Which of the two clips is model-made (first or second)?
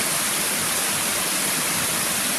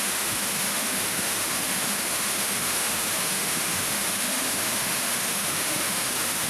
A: second